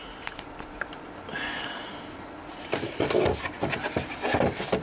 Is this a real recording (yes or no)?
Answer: yes